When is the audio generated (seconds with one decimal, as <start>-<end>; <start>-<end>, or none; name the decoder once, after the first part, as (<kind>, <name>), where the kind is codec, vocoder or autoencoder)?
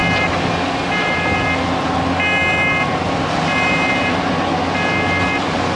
none